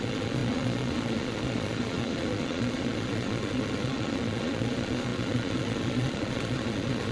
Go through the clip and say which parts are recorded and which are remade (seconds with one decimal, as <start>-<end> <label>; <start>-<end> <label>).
0.0-7.1 remade